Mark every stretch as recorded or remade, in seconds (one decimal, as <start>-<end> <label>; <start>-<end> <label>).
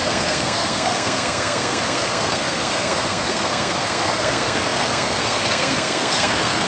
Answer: 0.0-6.7 remade